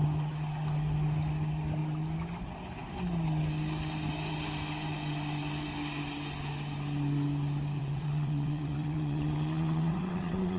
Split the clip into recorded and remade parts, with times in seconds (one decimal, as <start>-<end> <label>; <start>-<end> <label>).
0.0-7.8 recorded; 7.8-10.6 remade